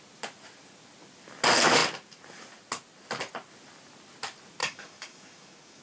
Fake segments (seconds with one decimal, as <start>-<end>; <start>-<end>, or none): 4.6-5.8